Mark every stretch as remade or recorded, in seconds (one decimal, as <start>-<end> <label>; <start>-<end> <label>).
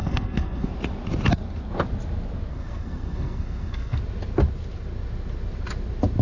0.0-0.7 remade; 0.7-2.5 recorded; 2.5-4.0 remade; 4.0-6.2 recorded